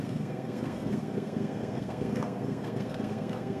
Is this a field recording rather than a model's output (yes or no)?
no